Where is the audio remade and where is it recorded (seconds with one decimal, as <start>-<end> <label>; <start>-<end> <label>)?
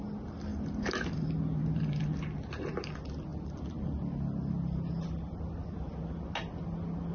0.0-0.5 recorded; 0.5-2.0 remade; 2.0-3.3 recorded; 3.3-3.9 remade; 3.9-7.1 recorded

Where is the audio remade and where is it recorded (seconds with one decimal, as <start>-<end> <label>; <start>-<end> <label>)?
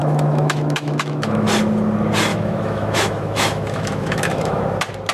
0.0-1.5 remade; 1.5-2.3 recorded; 2.3-4.6 remade; 4.6-5.1 recorded